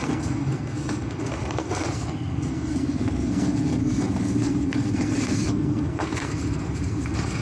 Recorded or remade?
remade